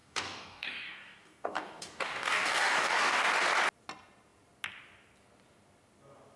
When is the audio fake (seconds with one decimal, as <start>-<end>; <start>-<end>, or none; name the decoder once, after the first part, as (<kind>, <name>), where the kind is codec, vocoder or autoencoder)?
0.0-3.3 (codec, DAC)